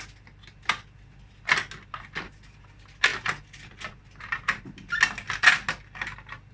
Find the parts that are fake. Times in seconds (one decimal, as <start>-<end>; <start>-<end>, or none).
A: none